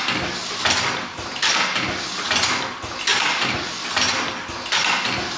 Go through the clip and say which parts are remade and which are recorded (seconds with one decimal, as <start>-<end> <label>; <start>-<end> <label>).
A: 0.0-5.4 recorded